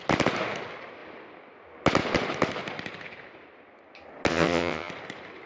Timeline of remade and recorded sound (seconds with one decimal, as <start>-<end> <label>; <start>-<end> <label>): 0.0-4.3 recorded; 4.3-4.9 remade; 4.9-5.5 recorded